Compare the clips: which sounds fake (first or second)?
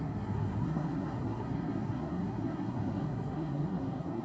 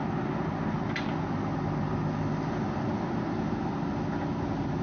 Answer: first